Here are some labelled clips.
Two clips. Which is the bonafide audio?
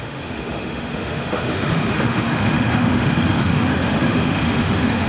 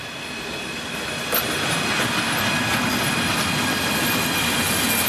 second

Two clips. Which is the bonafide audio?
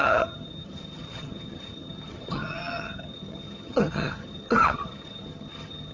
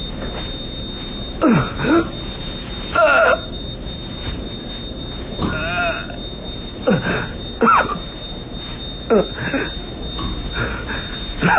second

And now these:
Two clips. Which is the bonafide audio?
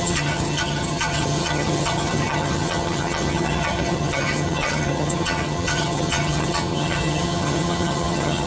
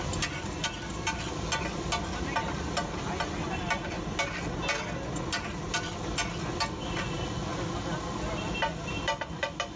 second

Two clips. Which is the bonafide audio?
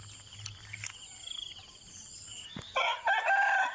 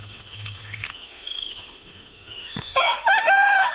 first